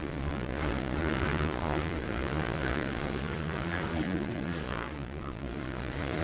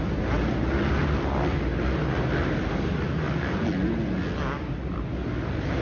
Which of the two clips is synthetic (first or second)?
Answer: first